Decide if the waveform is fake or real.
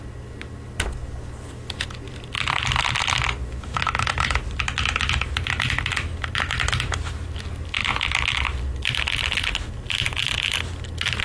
real